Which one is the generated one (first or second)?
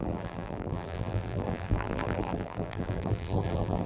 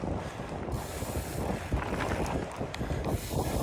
first